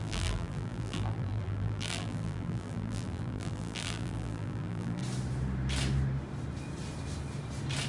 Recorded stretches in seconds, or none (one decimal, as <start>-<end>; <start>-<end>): 5.0-7.9